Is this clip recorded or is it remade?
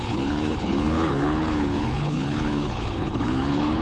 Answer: remade